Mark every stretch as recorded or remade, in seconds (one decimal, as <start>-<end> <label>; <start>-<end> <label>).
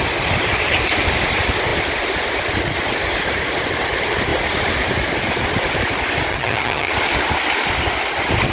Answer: 0.0-6.3 recorded; 6.3-6.9 remade; 6.9-8.5 recorded